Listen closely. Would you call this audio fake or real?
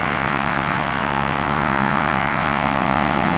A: fake